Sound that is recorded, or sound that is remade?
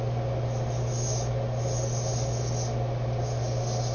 recorded